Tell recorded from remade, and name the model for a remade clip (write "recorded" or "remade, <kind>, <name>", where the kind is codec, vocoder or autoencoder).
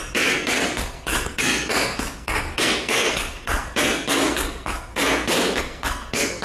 remade, codec, SNAC